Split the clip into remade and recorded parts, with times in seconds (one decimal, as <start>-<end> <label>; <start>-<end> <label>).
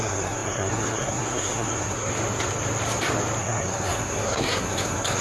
0.0-2.1 remade; 2.1-3.4 recorded; 3.4-5.2 remade